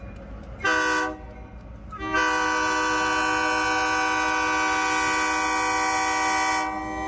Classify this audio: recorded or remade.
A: recorded